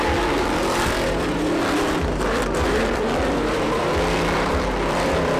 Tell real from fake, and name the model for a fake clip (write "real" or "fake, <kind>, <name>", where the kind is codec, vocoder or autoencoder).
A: fake, vocoder, BigVGAN v2